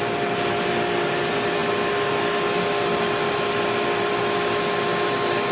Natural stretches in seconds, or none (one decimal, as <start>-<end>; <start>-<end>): 0.0-5.5